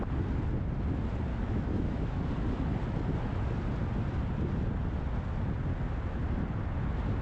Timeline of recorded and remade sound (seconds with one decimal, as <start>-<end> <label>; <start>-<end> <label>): 0.0-1.3 recorded; 1.3-2.2 remade; 2.2-7.2 recorded